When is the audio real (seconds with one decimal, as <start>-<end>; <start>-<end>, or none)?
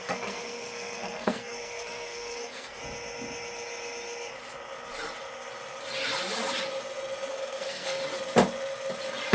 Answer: 2.8-7.3; 8.0-9.3